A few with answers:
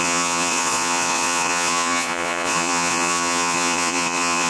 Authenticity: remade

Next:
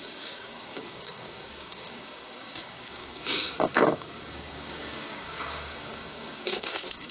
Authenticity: remade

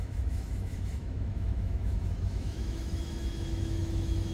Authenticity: remade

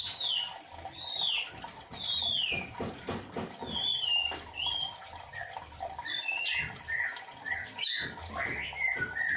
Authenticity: recorded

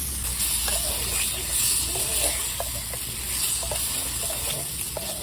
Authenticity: recorded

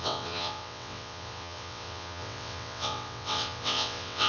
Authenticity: remade